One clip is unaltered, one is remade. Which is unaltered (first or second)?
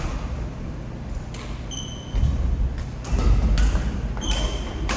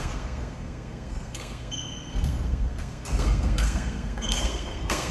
first